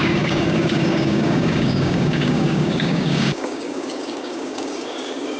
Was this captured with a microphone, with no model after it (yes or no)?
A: no